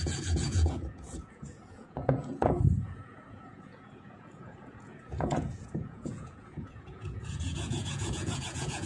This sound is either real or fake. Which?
fake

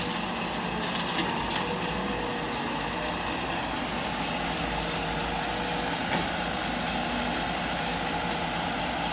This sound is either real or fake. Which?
real